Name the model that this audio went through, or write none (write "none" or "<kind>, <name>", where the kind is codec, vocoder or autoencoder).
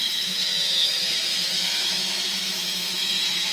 autoencoder, DAC-VAE